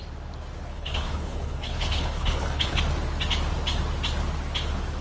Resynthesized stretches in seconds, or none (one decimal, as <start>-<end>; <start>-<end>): 0.7-2.8